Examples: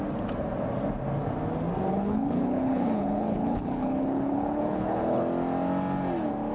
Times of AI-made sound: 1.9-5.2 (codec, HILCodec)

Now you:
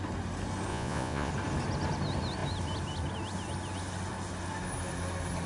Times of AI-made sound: 0.7-1.3 (vocoder, Vocos)

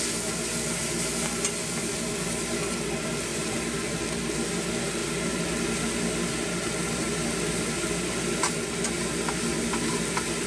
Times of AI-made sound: 3.3-4.0 (vocoder, BigVGAN v2)

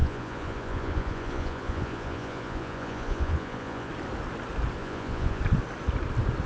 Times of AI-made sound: 0.0-3.9 (vocoder, Vocos); 4.8-5.4

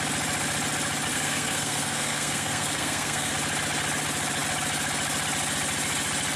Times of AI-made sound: 1.1-3.3 (codec, SNAC)

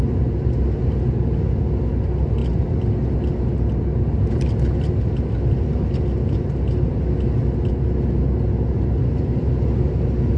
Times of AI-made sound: none

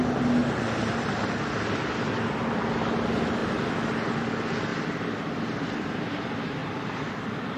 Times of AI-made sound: none